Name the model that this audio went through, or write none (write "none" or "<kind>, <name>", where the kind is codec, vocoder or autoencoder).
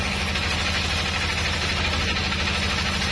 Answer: none